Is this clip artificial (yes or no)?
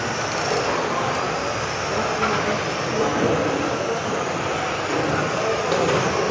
no